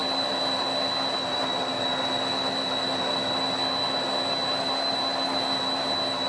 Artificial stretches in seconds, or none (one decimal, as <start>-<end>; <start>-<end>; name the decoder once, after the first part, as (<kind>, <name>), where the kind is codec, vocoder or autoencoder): none